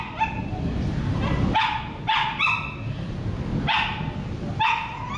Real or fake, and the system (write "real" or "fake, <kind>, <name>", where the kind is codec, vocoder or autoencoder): real